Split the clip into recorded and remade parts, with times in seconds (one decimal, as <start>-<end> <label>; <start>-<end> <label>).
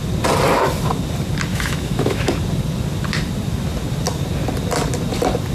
0.0-1.5 recorded; 1.5-2.3 remade; 2.3-5.5 recorded